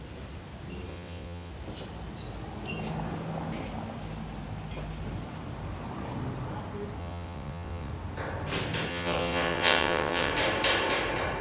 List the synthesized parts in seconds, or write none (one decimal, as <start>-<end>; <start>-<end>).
0.9-1.5; 7.0-7.9; 8.9-10.3